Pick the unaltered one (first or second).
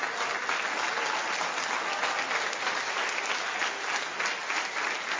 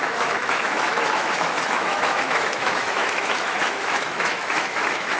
first